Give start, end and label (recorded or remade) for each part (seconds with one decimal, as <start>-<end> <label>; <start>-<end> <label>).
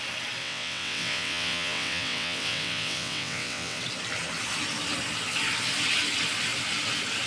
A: 0.0-0.4 recorded; 0.4-3.8 remade; 3.8-7.3 recorded